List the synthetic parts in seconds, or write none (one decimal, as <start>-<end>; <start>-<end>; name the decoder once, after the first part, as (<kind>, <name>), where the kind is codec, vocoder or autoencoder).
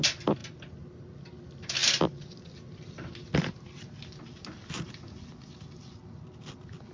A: none